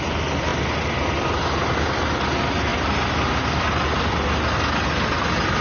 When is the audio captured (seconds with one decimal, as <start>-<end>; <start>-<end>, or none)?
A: 0.0-2.7; 3.4-5.6